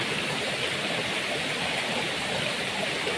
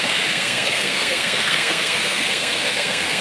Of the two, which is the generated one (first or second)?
second